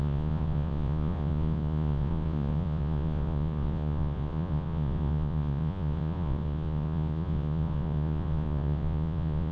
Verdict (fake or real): fake